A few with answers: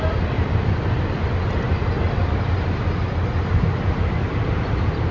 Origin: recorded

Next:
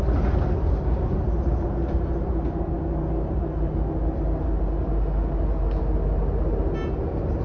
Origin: recorded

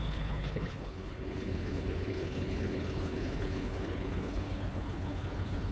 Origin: remade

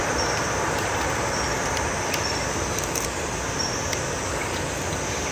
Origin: recorded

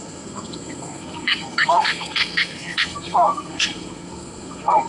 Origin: remade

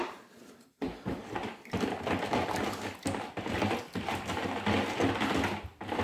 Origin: recorded